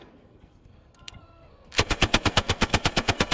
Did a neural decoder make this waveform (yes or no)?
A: yes